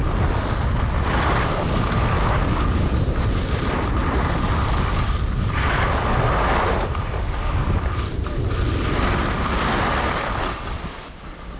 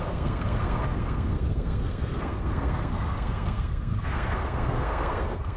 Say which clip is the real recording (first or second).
first